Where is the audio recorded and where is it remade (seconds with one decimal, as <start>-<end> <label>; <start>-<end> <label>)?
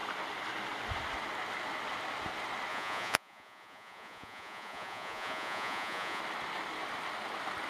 0.0-2.7 recorded; 2.7-6.2 remade; 6.2-7.7 recorded